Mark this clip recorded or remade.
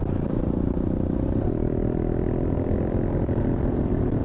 recorded